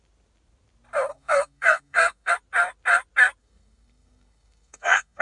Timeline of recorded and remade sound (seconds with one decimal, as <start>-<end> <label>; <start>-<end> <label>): 0.0-1.1 recorded; 1.1-2.3 remade; 2.3-3.4 recorded; 3.4-5.2 remade